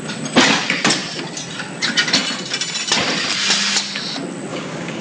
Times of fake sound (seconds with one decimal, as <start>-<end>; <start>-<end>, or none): 4.5-5.0